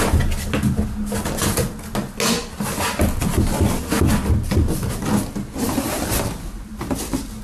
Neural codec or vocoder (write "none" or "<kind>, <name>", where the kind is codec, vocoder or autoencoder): none